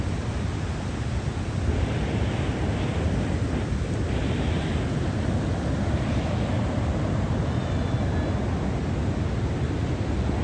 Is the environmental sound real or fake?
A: real